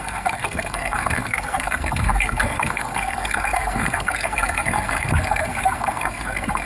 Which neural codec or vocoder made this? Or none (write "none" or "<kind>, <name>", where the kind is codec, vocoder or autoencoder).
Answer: codec, SNAC